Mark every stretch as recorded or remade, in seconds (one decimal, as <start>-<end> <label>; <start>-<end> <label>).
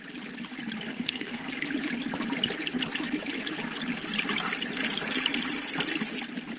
0.0-0.9 recorded; 0.9-1.5 remade; 1.5-6.6 recorded